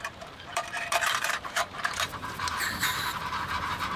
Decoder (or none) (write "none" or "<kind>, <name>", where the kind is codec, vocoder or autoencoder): vocoder, BigVGAN v2